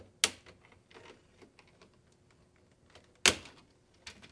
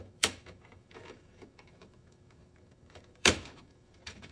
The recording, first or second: first